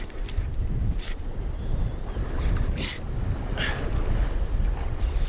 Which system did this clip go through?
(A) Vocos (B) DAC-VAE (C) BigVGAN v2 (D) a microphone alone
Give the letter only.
D